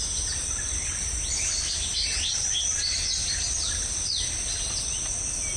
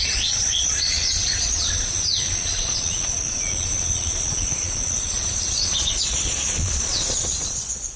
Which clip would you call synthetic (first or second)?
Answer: second